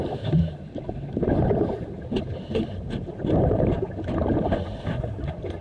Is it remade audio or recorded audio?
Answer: recorded